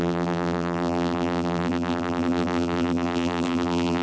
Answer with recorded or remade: remade